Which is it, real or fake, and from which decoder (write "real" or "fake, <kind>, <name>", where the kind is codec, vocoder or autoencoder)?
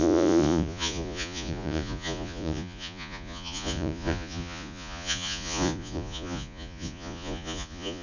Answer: fake, vocoder, Vocos